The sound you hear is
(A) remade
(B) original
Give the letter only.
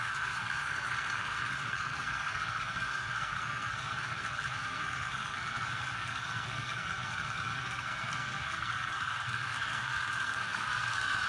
A